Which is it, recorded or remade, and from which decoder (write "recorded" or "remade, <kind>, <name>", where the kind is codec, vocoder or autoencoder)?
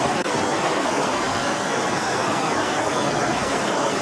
remade, codec, SNAC